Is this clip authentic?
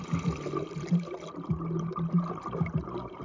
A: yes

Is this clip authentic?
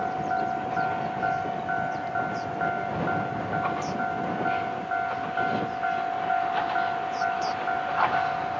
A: yes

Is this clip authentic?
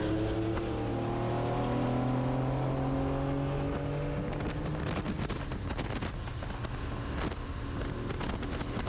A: yes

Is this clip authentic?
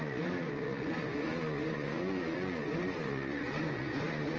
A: no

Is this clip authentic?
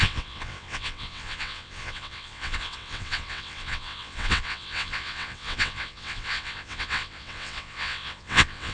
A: no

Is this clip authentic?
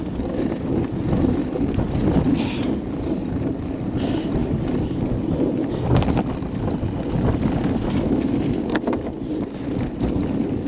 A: yes